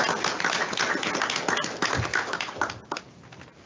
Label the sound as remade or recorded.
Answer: recorded